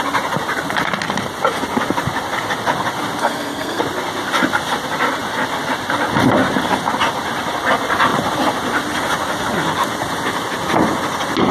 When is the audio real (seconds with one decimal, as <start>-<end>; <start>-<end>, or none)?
0.0-3.2; 3.8-11.5